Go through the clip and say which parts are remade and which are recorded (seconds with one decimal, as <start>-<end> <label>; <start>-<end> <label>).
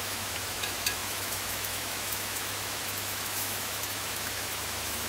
0.0-5.1 remade